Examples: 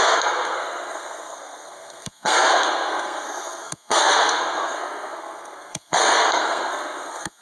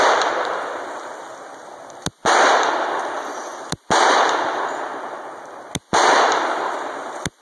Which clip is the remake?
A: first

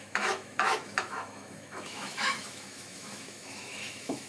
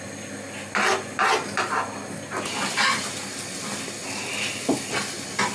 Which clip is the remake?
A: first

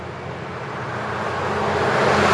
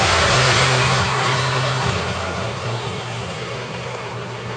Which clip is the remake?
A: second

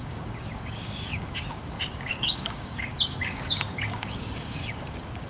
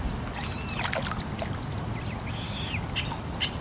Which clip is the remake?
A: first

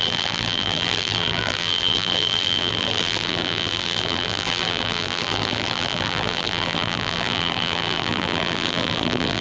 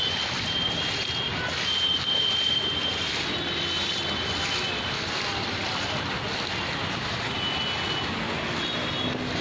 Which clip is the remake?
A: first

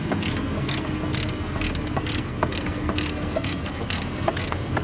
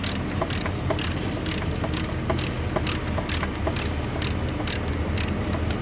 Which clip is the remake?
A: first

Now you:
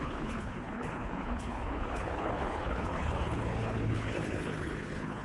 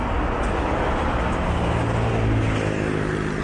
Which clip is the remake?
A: first